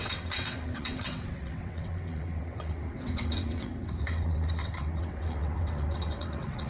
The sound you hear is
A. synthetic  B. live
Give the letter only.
A